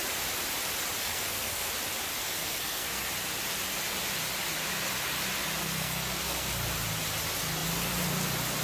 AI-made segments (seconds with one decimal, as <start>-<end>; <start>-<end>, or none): 1.0-1.7; 2.2-3.1; 5.6-6.5

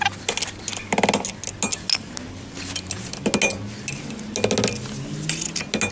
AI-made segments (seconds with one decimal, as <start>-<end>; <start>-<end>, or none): none

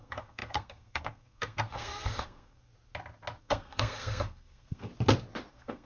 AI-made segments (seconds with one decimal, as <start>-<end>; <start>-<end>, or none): 0.0-2.7; 3.4-4.9; 5.5-5.9

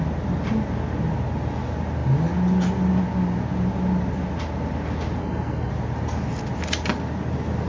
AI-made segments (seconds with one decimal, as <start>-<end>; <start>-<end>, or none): 5.2-5.7

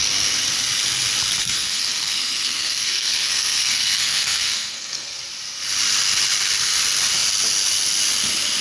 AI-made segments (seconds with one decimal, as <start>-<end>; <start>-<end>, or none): 1.4-5.2